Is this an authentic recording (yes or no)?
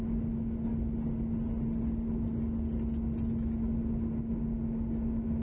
yes